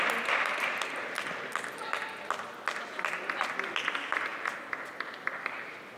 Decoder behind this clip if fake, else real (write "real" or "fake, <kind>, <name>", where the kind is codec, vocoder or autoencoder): real